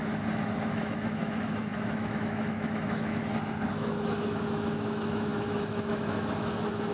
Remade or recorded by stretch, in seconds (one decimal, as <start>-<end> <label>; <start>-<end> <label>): 0.0-3.2 remade; 3.2-3.7 recorded; 3.7-6.9 remade